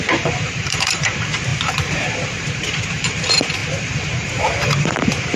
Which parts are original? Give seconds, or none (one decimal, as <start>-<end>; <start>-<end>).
none